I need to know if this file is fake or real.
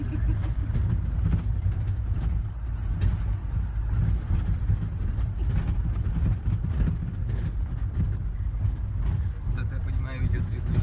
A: real